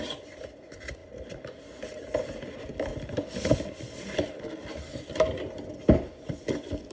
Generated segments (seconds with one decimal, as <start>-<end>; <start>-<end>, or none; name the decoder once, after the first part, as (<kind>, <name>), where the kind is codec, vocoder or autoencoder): none